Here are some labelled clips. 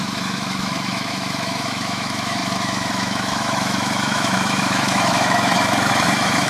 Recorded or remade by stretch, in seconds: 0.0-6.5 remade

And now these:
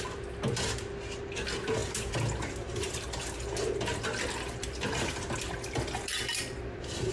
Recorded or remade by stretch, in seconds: 0.0-7.1 recorded

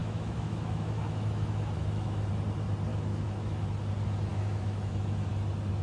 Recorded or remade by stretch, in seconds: 0.0-2.3 remade; 2.3-2.9 recorded; 2.9-3.7 remade; 3.7-4.3 recorded; 4.3-5.3 remade; 5.3-5.8 recorded